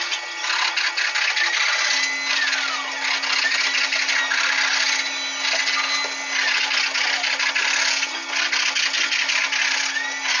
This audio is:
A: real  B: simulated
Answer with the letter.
A